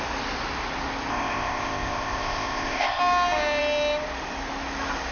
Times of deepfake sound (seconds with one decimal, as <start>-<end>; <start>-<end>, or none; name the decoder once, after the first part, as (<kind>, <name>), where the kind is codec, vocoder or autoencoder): 1.1-3.0 (codec, ZipCodec)